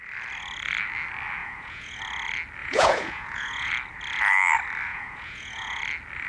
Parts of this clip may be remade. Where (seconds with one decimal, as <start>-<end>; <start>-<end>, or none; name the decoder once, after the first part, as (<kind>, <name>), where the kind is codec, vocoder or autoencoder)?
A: 1.4-2.0 (vocoder, Vocos); 2.6-3.7; 4.9-5.8